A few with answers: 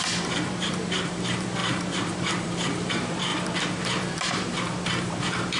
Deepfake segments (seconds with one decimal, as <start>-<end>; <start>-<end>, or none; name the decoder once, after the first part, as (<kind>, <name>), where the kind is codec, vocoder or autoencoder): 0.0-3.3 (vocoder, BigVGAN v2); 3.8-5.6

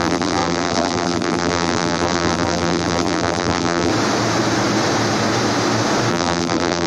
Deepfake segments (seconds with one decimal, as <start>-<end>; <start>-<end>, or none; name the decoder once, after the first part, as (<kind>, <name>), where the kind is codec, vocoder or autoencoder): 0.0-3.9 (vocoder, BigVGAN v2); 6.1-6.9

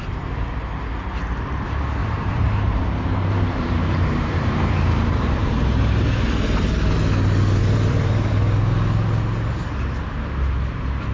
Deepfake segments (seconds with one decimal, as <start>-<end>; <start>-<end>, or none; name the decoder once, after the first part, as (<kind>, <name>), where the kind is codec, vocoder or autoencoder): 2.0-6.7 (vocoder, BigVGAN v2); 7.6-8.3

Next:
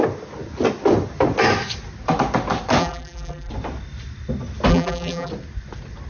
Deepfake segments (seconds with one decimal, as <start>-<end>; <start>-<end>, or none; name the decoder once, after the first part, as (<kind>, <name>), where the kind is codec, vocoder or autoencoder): 2.8-3.5 (vocoder, BigVGAN v2); 4.7-5.3